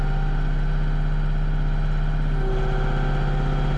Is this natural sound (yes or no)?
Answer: yes